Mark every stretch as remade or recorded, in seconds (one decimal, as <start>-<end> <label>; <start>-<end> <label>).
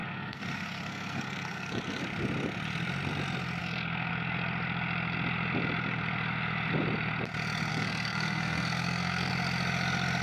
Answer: 0.0-2.0 remade; 2.0-3.6 recorded; 3.6-4.1 remade; 4.1-7.7 recorded; 7.7-9.3 remade; 9.3-10.2 recorded